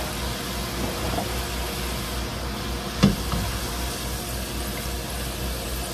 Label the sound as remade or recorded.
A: recorded